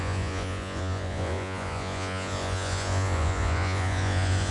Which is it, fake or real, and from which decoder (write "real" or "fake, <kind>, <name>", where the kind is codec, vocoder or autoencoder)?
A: fake, vocoder, Vocos